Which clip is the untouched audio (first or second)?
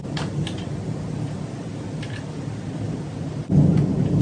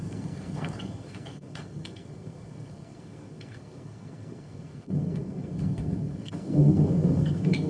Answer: first